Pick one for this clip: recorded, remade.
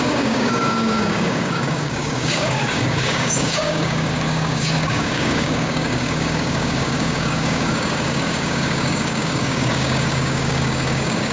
remade